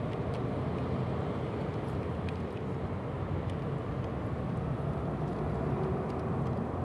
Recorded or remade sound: recorded